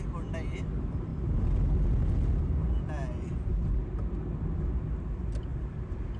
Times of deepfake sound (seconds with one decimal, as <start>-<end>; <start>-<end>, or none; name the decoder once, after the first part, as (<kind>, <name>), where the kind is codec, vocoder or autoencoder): none